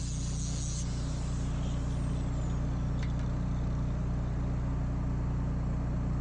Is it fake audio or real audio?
real